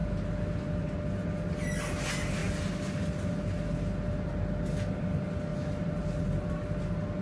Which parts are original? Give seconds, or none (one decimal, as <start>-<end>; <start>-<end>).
0.0-7.2